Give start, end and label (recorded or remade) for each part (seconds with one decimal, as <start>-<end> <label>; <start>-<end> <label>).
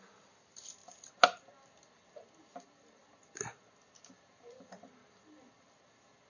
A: 0.0-6.3 recorded